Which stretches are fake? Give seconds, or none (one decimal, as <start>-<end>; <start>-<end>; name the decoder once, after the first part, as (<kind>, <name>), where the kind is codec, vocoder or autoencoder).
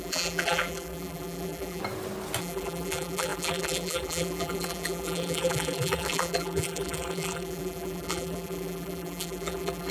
0.0-1.8 (vocoder, BigVGAN v2); 2.4-9.9